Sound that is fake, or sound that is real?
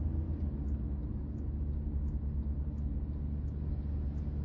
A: real